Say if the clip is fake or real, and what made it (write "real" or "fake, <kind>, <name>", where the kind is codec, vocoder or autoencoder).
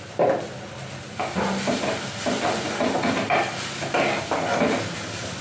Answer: fake, vocoder, BigVGAN v2